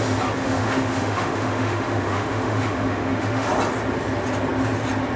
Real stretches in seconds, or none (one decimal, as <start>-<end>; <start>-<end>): 0.0-0.4; 3.5-5.2